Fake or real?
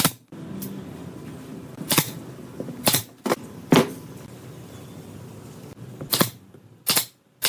real